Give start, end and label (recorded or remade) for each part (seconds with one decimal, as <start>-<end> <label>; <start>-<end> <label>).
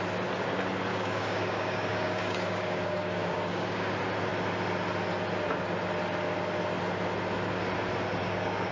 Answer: 0.0-0.9 recorded; 0.9-3.9 remade; 3.9-8.2 recorded; 8.2-8.7 remade